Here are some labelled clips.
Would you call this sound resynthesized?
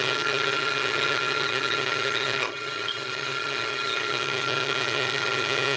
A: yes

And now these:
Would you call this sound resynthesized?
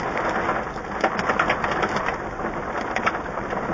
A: no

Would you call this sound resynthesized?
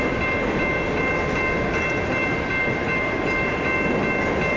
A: no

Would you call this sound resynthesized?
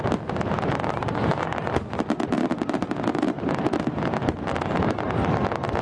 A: no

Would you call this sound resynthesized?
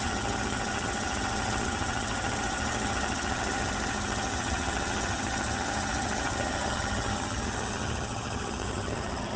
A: yes